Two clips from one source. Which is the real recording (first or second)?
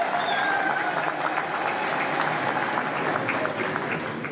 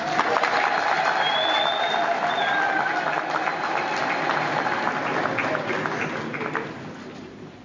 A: second